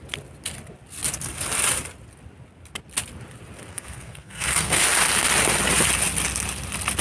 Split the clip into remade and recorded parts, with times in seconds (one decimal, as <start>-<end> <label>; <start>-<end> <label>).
0.0-3.7 recorded; 3.7-4.8 remade; 4.8-7.0 recorded